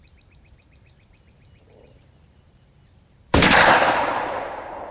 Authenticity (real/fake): fake